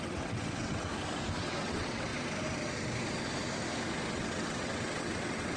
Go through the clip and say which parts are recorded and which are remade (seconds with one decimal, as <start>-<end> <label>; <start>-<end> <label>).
0.0-0.9 remade; 0.9-1.4 recorded; 1.4-2.1 remade; 2.1-4.1 recorded; 4.1-5.6 remade